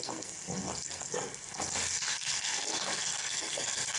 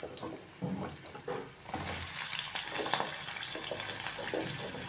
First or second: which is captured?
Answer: second